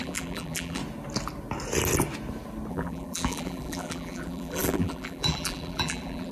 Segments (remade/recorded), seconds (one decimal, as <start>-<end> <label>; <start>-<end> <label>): 0.0-0.8 remade; 0.8-2.7 recorded; 2.7-6.3 remade